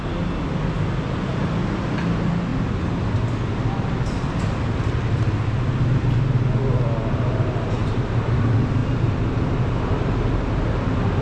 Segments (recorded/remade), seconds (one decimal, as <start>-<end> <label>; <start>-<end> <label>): 0.0-1.3 recorded; 1.3-1.9 remade; 1.9-7.8 recorded; 7.8-8.4 remade; 8.4-11.2 recorded